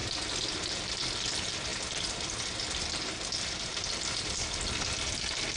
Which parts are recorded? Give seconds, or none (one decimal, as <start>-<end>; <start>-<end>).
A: 0.0-5.6